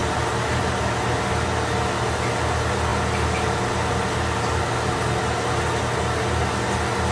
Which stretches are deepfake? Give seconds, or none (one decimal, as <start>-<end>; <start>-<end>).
none

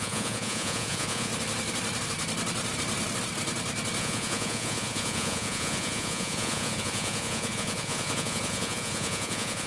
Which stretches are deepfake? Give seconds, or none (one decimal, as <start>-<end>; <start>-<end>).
0.0-1.3; 4.0-9.7

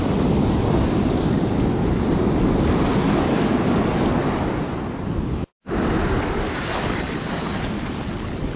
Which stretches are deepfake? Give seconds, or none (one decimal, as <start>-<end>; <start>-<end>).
none

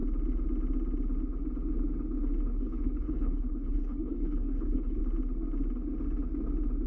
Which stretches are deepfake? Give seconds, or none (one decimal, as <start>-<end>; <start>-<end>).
2.5-5.0

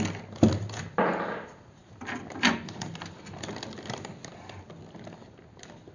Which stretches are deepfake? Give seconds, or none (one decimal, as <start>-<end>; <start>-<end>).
none

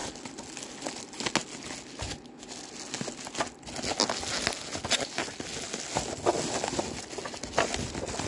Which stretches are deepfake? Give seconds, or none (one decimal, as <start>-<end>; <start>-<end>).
none

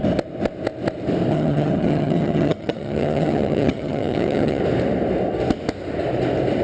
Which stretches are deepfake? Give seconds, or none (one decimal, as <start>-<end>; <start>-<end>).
1.3-4.6

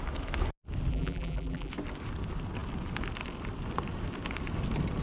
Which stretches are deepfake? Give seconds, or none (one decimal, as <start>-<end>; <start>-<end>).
0.9-1.7